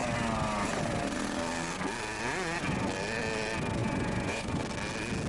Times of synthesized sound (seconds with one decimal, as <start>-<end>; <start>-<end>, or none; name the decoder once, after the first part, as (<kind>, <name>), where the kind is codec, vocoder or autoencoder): 3.8-4.6 (vocoder, Vocos)